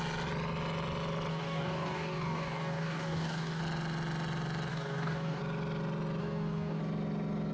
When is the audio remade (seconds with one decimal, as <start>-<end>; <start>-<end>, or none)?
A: 1.3-3.6; 4.7-5.4; 6.2-6.8

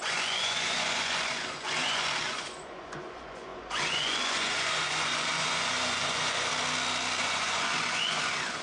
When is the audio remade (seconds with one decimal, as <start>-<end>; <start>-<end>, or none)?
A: 0.0-6.5; 7.2-8.6

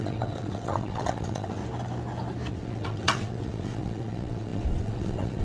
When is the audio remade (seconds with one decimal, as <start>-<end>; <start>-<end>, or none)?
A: 0.0-1.6; 2.5-5.4

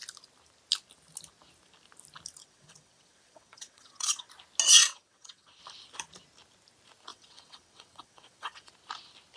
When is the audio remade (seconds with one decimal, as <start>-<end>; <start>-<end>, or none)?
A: 2.4-4.3; 4.9-5.6; 7.1-8.7

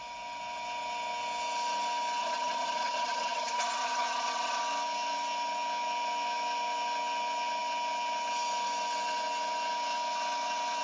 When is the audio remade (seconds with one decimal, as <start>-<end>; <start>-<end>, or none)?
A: 2.2-4.6

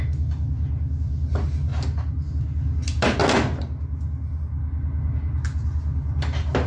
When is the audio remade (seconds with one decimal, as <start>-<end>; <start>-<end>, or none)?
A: none